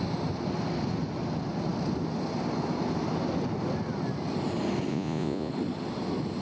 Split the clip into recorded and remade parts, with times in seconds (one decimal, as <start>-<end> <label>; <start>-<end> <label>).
0.0-4.9 recorded; 4.9-5.5 remade; 5.5-6.4 recorded